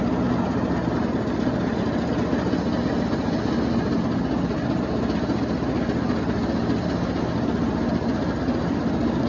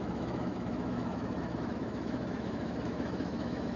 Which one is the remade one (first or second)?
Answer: second